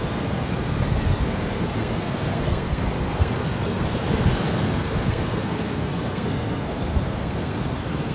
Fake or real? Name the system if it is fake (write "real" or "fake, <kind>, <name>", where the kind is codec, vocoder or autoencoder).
fake, codec, SNAC